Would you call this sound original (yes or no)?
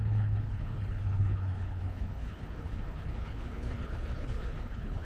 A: no